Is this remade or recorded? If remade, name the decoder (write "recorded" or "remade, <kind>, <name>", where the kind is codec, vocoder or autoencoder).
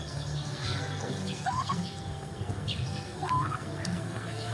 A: remade, codec, SNAC